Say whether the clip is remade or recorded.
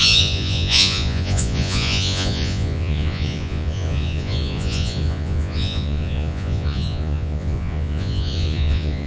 remade